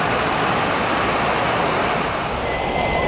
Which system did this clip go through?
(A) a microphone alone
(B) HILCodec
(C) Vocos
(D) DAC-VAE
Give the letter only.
A